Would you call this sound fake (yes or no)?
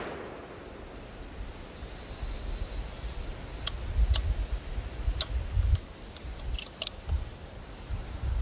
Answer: no